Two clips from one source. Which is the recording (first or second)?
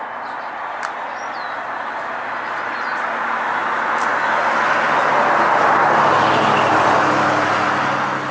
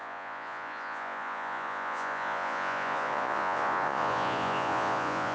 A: first